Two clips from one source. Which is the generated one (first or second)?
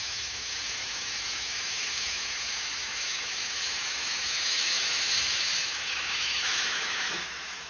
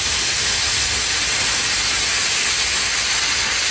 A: first